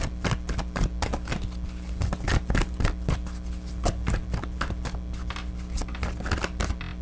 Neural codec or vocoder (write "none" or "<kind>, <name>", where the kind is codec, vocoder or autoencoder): none